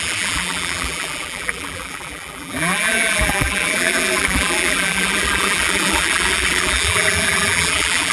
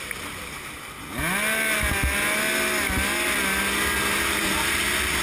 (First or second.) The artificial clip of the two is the first